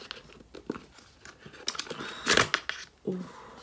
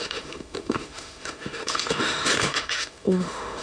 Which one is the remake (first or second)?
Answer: second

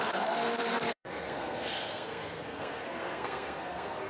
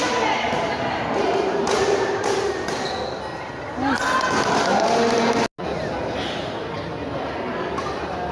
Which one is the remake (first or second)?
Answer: first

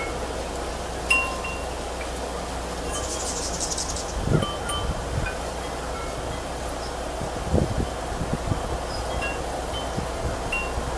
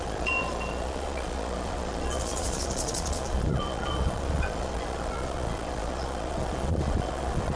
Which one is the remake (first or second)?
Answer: second